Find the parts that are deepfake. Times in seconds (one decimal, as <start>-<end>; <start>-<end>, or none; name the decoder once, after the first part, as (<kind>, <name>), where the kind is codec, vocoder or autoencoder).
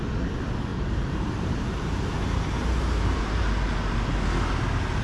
0.7-3.4 (vocoder, BigVGAN v2)